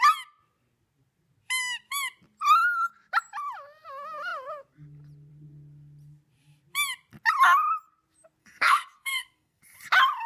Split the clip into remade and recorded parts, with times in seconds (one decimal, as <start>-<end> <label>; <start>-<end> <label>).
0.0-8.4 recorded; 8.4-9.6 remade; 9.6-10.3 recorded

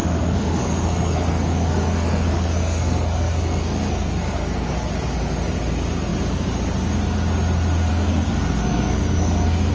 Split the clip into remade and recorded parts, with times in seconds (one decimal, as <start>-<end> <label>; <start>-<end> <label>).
0.0-4.9 remade; 4.9-7.9 recorded; 7.9-9.7 remade

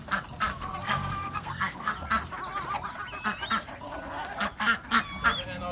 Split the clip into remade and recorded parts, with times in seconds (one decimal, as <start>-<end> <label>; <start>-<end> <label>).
0.0-0.5 recorded; 0.5-1.9 remade; 1.9-5.7 recorded

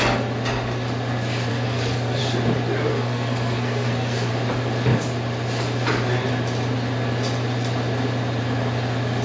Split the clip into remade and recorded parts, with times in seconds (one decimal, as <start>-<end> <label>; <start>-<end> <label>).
0.0-1.5 recorded; 1.5-2.2 remade; 2.2-2.9 recorded; 2.9-4.3 remade; 4.3-9.2 recorded

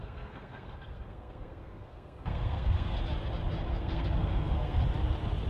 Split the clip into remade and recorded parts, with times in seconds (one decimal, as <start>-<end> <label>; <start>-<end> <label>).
0.0-3.0 remade; 3.0-3.7 recorded; 3.7-4.8 remade; 4.8-5.5 recorded

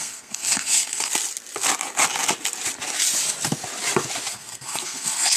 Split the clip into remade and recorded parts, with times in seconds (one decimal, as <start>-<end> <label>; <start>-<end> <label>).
0.0-1.1 remade; 1.1-4.3 recorded; 4.3-5.4 remade

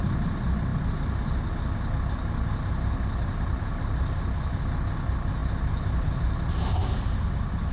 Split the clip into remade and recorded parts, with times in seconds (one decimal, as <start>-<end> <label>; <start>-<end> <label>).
0.0-7.7 recorded